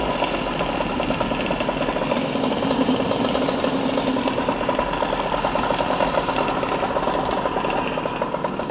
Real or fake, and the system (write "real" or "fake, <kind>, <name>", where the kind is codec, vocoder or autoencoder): real